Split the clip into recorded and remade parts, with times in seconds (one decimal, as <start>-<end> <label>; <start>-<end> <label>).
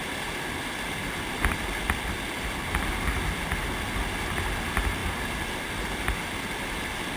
0.0-7.2 recorded